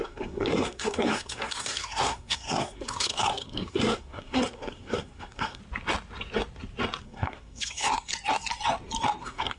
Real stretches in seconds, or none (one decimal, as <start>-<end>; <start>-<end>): 5.6-7.0; 8.1-9.2